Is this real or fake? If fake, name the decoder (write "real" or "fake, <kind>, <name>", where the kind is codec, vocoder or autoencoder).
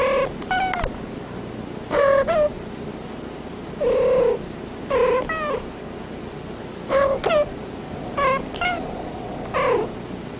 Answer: real